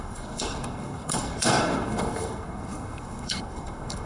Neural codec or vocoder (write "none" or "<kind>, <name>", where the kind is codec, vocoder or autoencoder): codec, SNAC